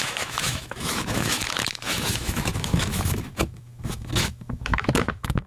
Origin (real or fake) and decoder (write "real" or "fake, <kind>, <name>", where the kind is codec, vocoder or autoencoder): fake, autoencoder, DAC-VAE